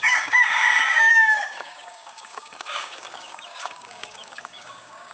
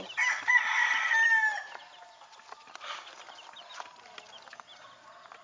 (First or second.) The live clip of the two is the second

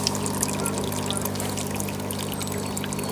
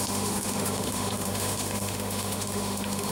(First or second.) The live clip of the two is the first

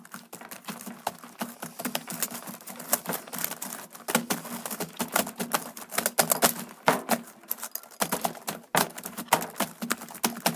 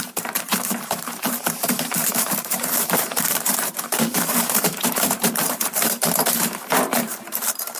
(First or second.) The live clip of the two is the first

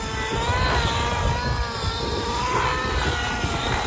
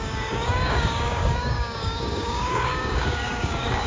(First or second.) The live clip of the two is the first